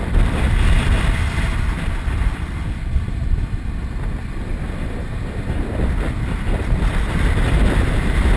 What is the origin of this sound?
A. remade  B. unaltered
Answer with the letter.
A